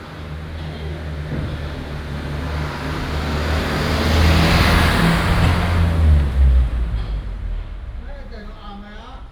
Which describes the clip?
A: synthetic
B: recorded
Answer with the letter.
B